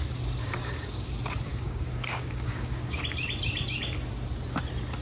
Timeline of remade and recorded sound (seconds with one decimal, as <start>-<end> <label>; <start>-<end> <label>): 0.0-0.4 recorded; 0.4-1.1 remade; 1.1-1.5 recorded; 1.5-3.0 remade; 3.0-5.0 recorded